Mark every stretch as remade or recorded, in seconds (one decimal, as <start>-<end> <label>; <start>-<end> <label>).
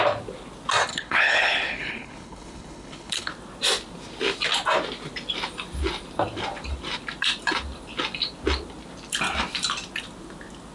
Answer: 0.0-0.9 recorded; 0.9-3.3 remade; 3.3-10.7 recorded